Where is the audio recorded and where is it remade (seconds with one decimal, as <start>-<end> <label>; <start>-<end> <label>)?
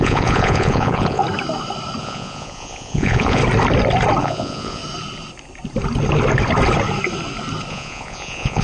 0.0-1.2 remade; 1.2-2.0 recorded; 2.0-3.4 remade; 3.4-4.2 recorded; 4.2-4.8 remade; 4.8-7.7 recorded; 7.7-8.6 remade